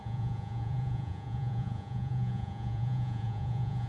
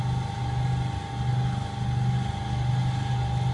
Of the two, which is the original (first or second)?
second